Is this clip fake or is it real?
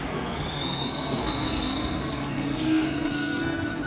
fake